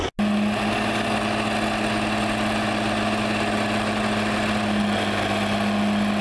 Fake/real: real